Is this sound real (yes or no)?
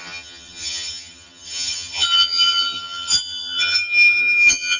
no